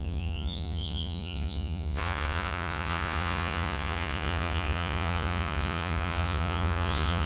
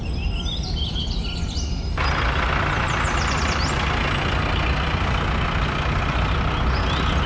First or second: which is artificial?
first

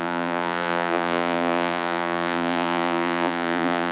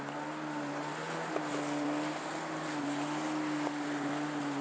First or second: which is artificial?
first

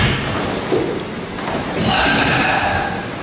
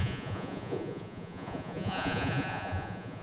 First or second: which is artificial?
second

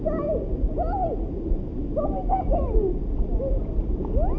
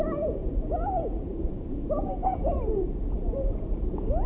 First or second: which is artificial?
second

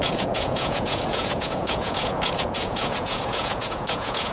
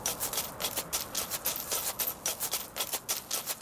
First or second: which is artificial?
first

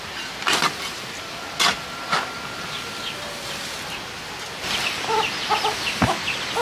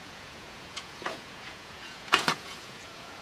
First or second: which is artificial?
second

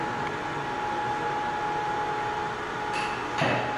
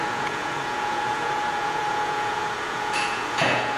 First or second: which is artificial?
second